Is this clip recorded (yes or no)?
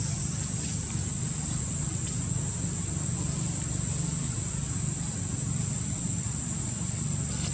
yes